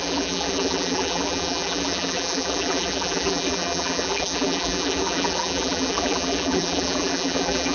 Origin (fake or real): fake